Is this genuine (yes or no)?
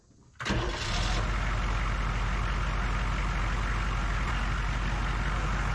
yes